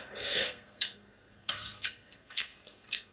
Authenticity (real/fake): fake